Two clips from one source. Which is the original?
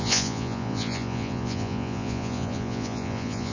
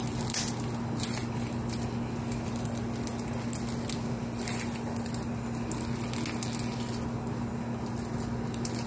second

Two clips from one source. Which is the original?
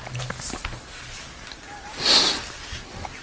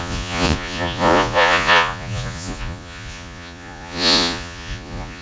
first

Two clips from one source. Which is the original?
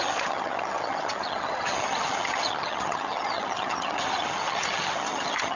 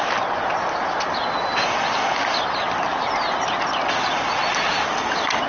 second